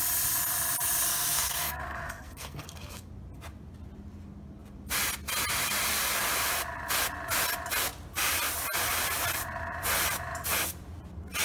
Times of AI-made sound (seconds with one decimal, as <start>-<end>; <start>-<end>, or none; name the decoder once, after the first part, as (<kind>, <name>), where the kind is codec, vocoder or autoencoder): 1.1-3.1 (codec, SNAC)

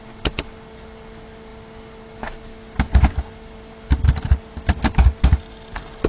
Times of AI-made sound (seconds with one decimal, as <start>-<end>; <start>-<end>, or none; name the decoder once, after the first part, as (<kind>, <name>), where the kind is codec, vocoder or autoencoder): none

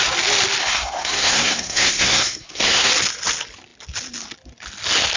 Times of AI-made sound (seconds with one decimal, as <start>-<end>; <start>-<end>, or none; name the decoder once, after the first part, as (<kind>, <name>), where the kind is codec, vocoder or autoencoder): 0.6-2.9 (codec, SNAC)

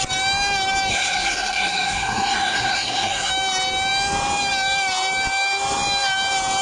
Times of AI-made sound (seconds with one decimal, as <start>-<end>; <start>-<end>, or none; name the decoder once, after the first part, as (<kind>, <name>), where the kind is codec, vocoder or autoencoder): 0.9-3.3 (codec, SNAC)

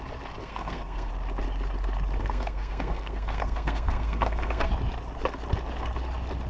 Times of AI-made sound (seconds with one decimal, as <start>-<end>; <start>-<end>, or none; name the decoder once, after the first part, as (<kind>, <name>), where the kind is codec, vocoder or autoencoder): 0.4-1.1 (codec, SNAC); 2.2-4.7

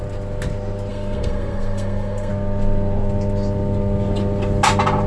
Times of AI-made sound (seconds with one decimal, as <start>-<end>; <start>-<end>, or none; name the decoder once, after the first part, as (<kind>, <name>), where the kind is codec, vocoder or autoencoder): 0.9-2.3 (codec, SNAC)

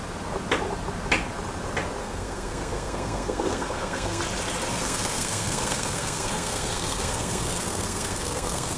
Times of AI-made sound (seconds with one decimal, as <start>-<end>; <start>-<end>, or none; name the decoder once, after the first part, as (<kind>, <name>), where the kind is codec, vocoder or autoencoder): 2.0-4.2 (codec, SNAC); 4.7-8.8

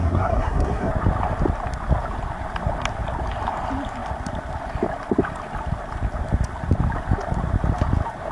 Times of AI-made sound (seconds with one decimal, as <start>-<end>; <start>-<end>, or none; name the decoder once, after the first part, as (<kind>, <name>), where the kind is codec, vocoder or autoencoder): 0.0-0.9 (codec, SNAC)